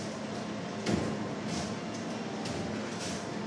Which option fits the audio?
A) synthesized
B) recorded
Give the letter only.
B